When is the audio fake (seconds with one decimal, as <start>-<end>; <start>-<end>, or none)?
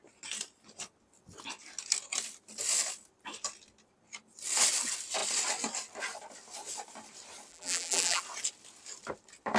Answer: 7.5-8.2